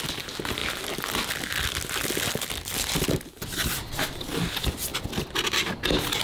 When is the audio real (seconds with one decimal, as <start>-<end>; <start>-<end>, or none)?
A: 0.0-6.2